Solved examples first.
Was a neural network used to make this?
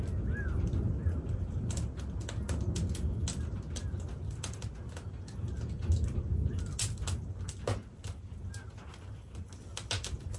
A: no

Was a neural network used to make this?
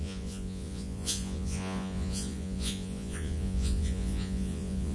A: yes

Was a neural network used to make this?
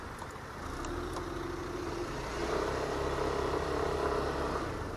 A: no